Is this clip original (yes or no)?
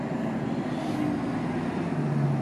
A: yes